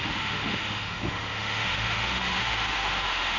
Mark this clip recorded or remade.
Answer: remade